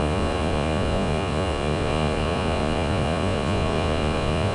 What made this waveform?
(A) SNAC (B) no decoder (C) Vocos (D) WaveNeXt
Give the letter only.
C